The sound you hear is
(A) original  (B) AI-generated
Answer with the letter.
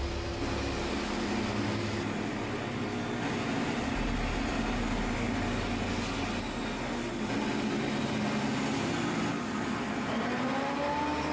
A